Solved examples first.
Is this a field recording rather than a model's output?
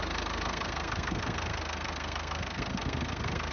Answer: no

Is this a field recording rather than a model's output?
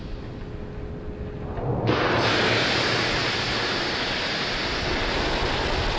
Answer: yes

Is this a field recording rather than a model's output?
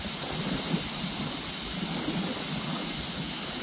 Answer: yes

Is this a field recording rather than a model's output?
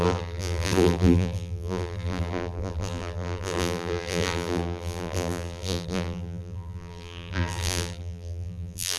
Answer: no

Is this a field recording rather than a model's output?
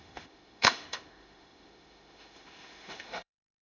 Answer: no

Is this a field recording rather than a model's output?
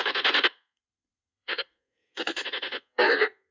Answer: no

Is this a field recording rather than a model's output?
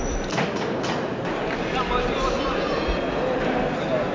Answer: yes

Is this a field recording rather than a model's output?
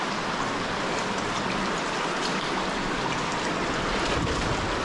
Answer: yes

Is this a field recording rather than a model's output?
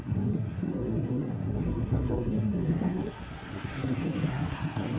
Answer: no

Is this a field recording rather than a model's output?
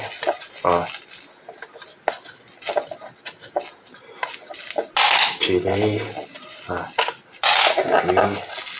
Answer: yes